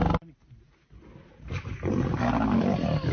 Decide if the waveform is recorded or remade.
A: recorded